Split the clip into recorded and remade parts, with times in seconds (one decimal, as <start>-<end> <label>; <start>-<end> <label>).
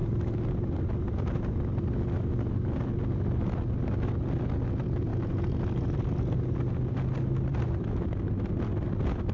0.0-9.3 recorded